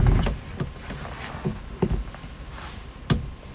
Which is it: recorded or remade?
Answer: recorded